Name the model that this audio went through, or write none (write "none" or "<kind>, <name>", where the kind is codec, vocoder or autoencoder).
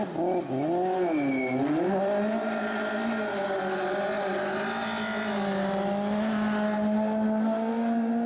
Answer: none